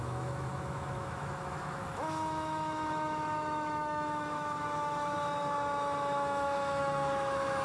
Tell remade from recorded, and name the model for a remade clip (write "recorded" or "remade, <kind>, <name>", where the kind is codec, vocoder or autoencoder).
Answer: remade, autoencoder, DAC-VAE